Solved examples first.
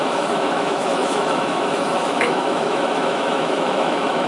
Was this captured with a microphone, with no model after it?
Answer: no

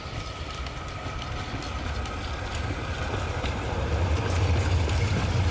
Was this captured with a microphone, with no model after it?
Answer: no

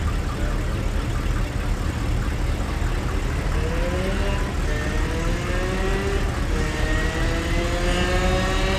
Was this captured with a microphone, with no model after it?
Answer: yes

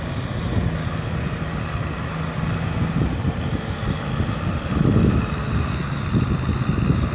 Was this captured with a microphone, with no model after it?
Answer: yes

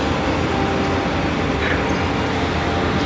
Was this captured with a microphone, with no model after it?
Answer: yes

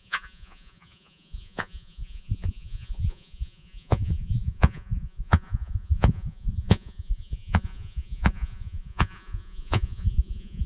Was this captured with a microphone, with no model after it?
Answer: no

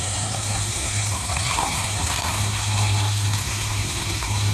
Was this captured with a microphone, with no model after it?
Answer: no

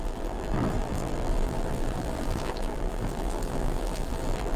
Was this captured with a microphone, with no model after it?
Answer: no